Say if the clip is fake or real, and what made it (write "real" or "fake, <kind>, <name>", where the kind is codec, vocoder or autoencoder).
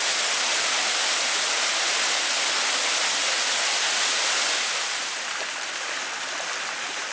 real